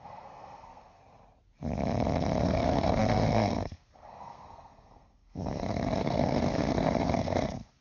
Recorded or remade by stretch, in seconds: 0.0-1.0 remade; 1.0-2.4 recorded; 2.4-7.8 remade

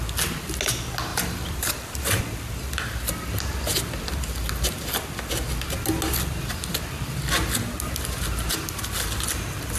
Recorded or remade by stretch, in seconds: 0.0-1.1 recorded; 1.1-2.2 remade; 2.2-9.8 recorded

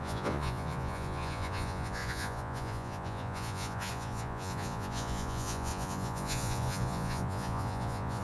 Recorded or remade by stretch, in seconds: 0.0-8.2 remade

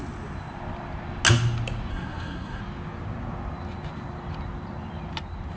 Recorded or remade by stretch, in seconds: 0.0-1.9 recorded; 1.9-2.6 remade; 2.6-5.6 recorded

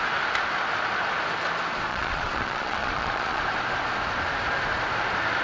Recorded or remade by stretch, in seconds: 0.0-1.9 recorded; 1.9-3.4 remade; 3.4-5.4 recorded

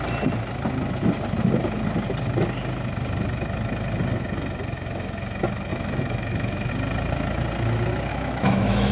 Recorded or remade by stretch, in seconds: 0.0-5.7 recorded; 5.7-6.7 remade; 6.7-8.1 recorded; 8.1-8.9 remade

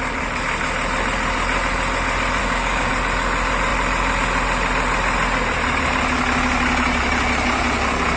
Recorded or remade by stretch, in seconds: 0.0-2.4 recorded; 2.4-2.9 remade; 2.9-8.2 recorded